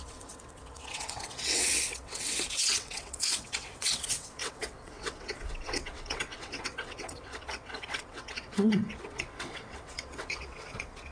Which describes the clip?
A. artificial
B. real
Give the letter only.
A